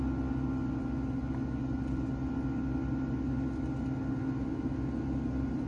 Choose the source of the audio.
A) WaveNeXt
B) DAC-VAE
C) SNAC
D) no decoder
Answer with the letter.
D